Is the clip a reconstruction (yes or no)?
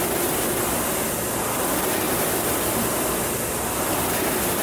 no